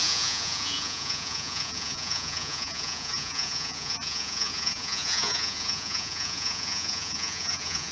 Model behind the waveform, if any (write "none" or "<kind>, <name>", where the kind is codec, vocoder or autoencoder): vocoder, Vocos